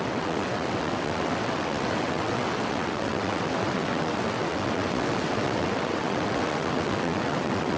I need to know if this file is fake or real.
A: fake